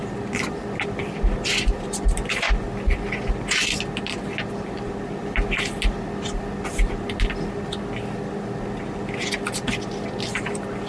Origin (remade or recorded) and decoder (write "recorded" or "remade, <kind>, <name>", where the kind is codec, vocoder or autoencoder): recorded